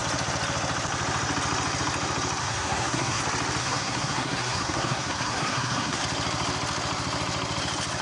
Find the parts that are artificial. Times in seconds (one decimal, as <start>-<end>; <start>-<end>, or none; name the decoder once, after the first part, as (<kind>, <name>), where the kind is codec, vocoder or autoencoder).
2.4-3.2 (codec, SNAC); 3.6-6.0